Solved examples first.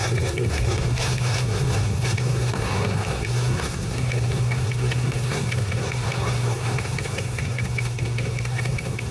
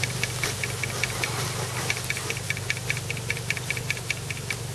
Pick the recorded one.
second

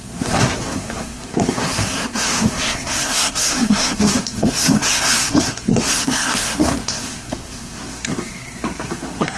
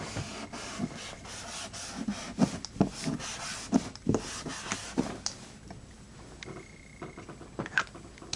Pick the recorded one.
second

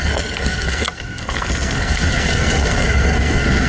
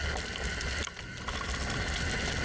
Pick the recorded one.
second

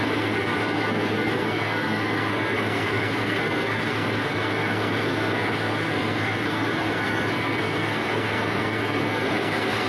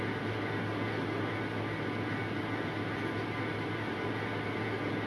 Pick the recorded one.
second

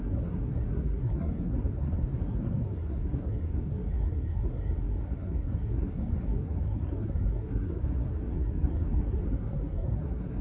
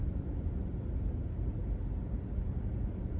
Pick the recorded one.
second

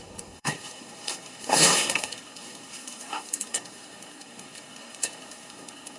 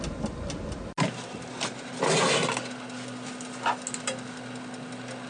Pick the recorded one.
second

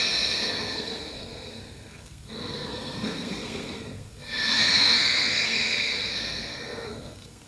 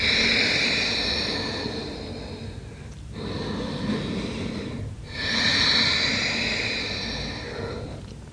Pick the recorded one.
second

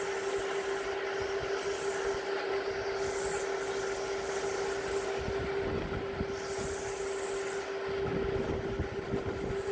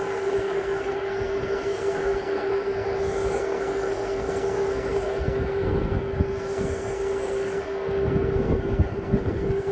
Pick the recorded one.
first